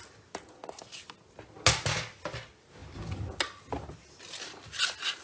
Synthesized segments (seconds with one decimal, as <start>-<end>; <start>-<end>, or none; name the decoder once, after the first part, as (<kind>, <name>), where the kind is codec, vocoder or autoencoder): none